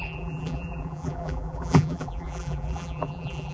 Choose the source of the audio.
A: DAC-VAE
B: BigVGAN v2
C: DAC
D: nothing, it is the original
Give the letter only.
B